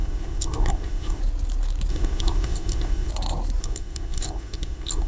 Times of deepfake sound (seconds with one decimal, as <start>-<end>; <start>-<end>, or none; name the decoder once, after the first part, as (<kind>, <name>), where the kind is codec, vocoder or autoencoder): 0.0-1.2 (codec, SNAC); 1.9-3.1; 3.6-5.1